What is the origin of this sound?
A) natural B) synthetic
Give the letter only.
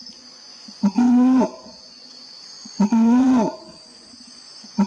B